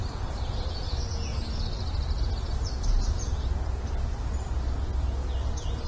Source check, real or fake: real